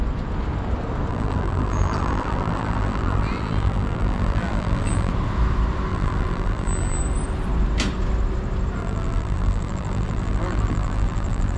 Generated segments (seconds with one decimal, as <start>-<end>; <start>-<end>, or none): 1.1-5.1; 5.9-7.0; 8.8-11.6